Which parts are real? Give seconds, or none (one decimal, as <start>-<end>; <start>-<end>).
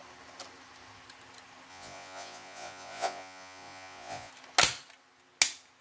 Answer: 0.0-1.7; 4.3-5.8